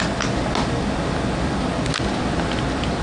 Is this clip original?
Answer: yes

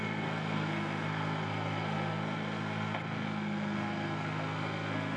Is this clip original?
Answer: no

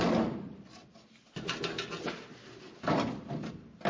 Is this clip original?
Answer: yes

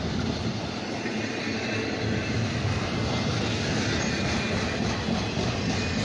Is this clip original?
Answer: yes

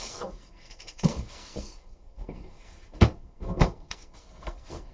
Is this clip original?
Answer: no